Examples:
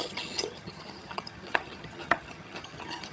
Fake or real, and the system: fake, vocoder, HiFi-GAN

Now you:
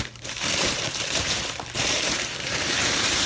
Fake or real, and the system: fake, vocoder, BigVGAN v2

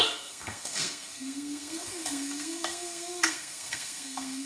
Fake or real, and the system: fake, codec, SNAC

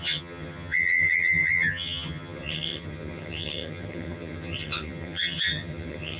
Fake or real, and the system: fake, vocoder, HiFi-GAN